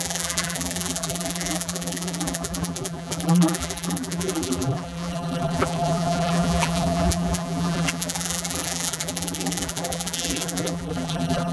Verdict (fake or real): fake